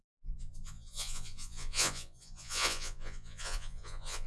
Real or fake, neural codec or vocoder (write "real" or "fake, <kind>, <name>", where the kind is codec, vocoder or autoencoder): fake, vocoder, Vocos